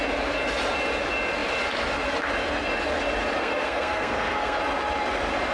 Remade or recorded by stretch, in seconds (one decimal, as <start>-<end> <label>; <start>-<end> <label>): 0.0-3.4 recorded; 3.4-4.6 remade; 4.6-5.5 recorded